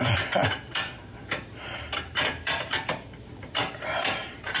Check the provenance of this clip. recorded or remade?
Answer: remade